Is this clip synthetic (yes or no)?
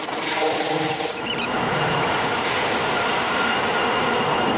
no